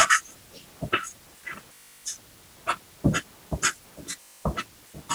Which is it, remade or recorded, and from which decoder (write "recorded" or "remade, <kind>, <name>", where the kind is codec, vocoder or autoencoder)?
recorded